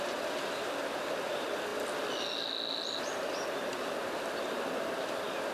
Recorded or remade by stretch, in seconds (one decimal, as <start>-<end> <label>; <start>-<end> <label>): 0.0-5.5 recorded